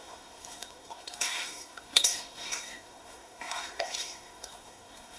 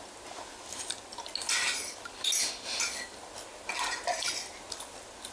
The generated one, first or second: first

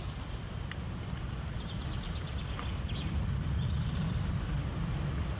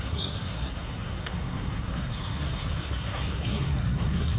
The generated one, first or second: second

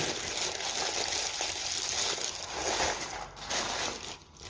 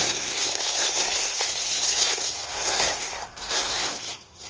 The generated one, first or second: second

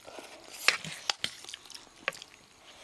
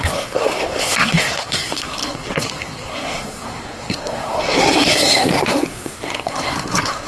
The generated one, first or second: second